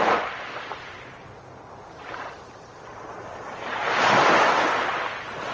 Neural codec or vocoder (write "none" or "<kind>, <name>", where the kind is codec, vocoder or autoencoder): none